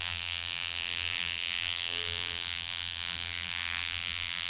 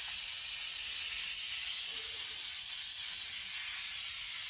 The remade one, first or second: first